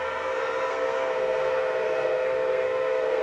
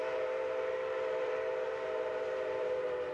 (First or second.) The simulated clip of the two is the first